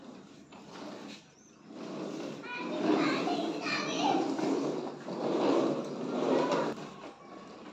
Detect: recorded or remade recorded